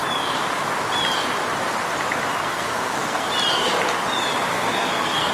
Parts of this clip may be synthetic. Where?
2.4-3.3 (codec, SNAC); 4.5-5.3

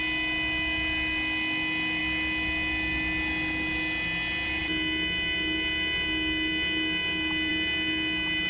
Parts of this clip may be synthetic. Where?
none